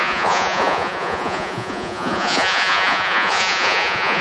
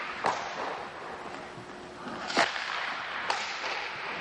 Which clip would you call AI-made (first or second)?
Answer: first